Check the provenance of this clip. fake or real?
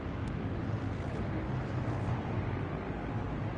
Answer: real